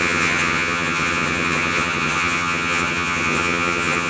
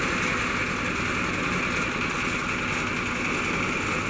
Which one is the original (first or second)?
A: second